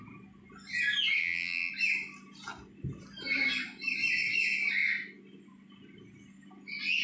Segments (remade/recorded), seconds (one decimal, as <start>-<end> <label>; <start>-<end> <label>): 0.0-1.2 recorded; 1.2-1.7 remade; 1.7-7.0 recorded